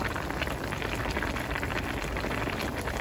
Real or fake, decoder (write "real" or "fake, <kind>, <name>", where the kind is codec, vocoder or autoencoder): real